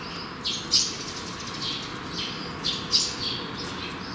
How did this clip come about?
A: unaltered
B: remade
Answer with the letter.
A